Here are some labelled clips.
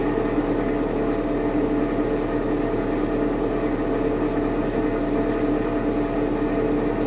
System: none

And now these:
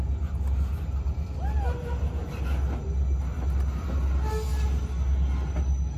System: none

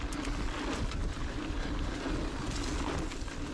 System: none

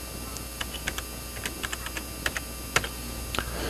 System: none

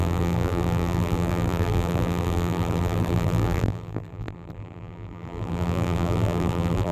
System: vocoder, BigVGAN v2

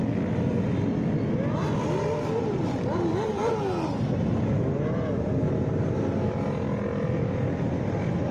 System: none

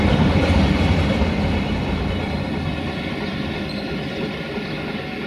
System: none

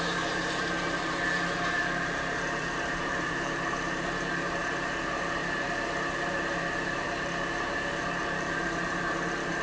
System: vocoder, BigVGAN v2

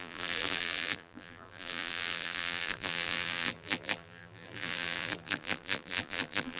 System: vocoder, BigVGAN v2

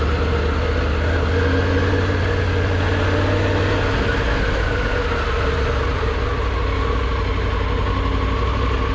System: none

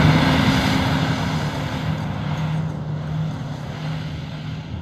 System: none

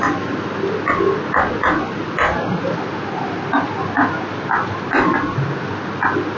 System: none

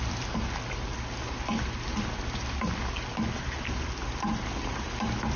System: none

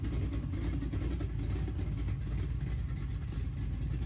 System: none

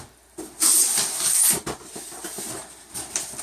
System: vocoder, BigVGAN v2